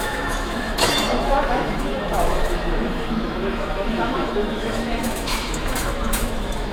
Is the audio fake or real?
fake